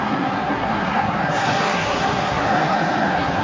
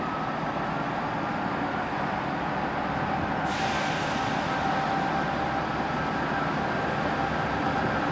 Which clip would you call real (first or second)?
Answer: second